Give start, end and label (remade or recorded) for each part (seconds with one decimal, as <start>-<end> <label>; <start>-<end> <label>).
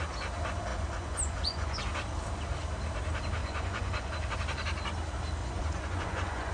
0.0-0.7 recorded; 0.7-1.8 remade; 1.8-3.4 recorded; 3.4-4.1 remade; 4.1-5.4 recorded; 5.4-6.5 remade